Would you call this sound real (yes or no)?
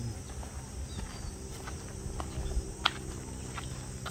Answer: yes